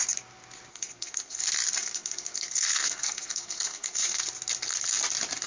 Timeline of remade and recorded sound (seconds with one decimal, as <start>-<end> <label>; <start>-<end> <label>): 0.0-0.7 recorded; 0.7-1.4 remade; 1.4-1.8 recorded; 1.8-4.2 remade; 4.2-5.5 recorded